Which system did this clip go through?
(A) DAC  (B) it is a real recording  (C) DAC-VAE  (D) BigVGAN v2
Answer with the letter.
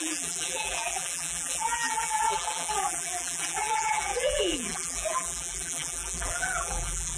D